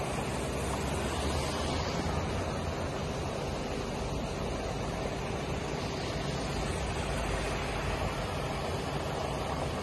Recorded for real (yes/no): yes